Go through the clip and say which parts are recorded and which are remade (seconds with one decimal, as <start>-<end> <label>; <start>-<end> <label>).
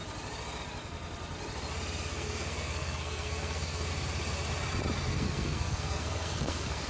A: 0.0-2.1 recorded; 2.1-3.9 remade; 3.9-5.1 recorded; 5.1-6.9 remade